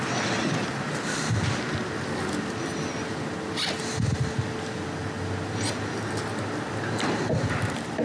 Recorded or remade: recorded